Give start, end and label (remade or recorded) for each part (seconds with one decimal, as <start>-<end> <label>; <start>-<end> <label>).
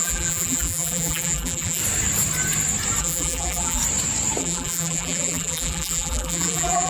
0.0-1.8 remade; 1.8-3.0 recorded; 3.0-3.8 remade; 3.8-4.4 recorded; 4.4-6.9 remade